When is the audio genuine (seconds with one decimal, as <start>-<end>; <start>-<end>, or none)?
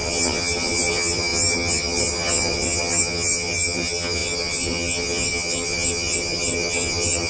none